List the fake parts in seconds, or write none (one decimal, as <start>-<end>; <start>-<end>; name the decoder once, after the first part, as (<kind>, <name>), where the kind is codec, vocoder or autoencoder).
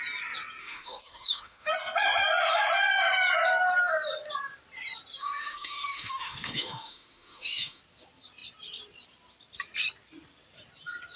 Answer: 0.6-1.7 (autoencoder, DAC-VAE); 5.2-7.8